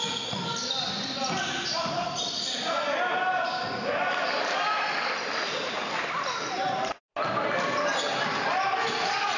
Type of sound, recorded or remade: recorded